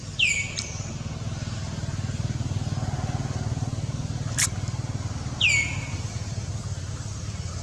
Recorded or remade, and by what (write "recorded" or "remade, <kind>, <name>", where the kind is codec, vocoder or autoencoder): recorded